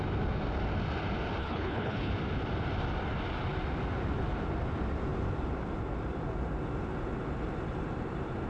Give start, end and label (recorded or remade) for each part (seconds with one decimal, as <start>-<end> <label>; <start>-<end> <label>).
0.0-1.4 recorded; 1.4-2.1 remade; 2.1-8.5 recorded